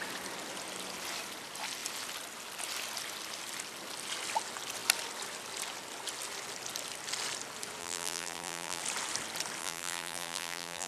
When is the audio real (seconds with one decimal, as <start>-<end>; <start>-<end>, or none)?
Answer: 0.0-7.8; 8.8-9.6